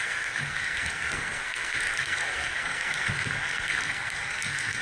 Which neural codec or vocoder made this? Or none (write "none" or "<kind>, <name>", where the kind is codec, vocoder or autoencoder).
codec, SNAC